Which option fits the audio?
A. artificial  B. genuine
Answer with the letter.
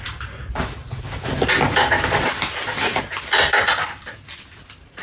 B